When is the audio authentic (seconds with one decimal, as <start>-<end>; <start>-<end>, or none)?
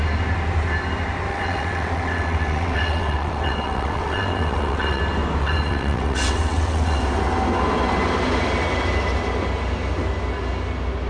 0.0-1.3; 5.0-5.4; 7.0-11.1